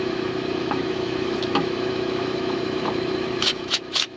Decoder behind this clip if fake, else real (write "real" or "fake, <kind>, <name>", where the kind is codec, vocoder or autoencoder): fake, autoencoder, DAC-VAE